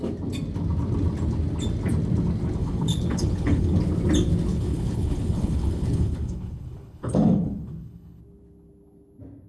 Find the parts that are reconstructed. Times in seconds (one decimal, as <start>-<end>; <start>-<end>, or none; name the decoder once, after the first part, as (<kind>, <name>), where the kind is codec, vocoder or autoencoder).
2.6-3.8 (codec, HILCodec); 4.5-8.2